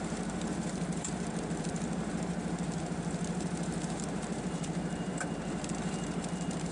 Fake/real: fake